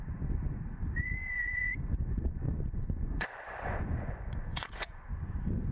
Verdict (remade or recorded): remade